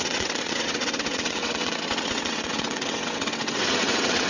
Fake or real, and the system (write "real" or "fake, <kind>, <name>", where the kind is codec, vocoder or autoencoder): fake, vocoder, WaveNeXt